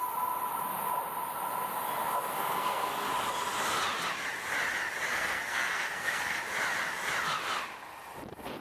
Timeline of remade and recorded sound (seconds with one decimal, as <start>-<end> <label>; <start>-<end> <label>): 0.0-2.3 recorded; 2.3-3.1 remade; 3.1-5.1 recorded; 5.1-6.4 remade; 6.4-8.6 recorded